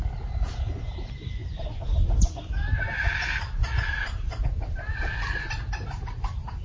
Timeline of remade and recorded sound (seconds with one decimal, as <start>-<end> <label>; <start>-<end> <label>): 0.0-6.6 recorded